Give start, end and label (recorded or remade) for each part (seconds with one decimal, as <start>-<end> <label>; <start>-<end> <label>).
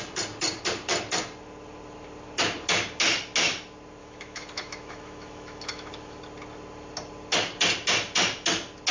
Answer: 0.0-4.0 recorded; 4.0-6.2 remade; 6.2-8.9 recorded